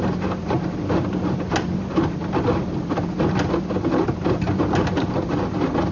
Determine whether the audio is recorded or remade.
recorded